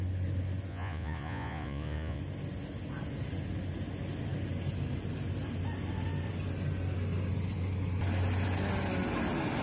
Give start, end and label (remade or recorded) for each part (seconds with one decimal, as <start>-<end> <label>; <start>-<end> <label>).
0.0-0.7 recorded; 0.7-2.2 remade; 2.2-9.6 recorded